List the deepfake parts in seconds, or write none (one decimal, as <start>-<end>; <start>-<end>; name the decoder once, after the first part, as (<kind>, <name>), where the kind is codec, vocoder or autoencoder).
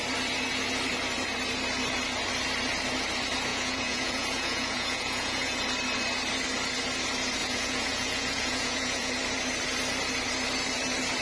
3.5-5.6 (vocoder, Vocos); 7.4-9.1